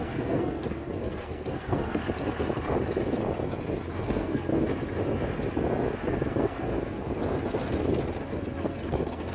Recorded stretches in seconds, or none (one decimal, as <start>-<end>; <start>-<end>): 2.0-4.0; 4.5-6.1; 6.7-8.6